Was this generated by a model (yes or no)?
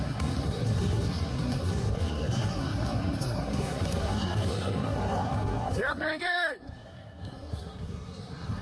yes